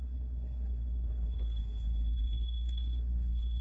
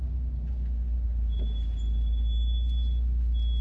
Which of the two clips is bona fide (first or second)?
second